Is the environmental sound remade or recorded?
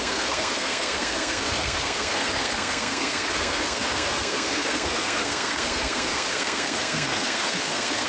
remade